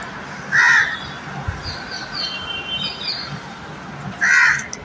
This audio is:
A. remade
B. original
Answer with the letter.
B